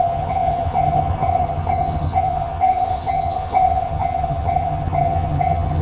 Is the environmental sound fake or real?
fake